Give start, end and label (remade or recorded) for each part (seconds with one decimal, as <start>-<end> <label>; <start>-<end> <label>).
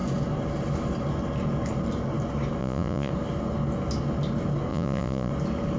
0.0-2.6 recorded; 2.6-3.1 remade; 3.1-4.7 recorded; 4.7-5.3 remade; 5.3-5.8 recorded